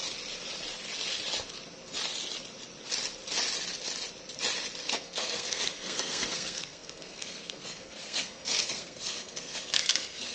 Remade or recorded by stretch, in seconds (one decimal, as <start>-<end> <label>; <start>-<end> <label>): 0.0-4.8 recorded; 4.8-10.3 remade